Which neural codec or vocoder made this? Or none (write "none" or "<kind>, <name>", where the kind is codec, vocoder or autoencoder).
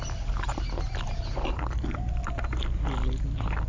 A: none